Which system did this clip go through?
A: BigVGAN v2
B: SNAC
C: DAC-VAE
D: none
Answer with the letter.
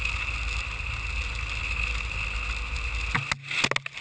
D